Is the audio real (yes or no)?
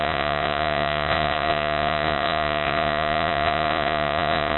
no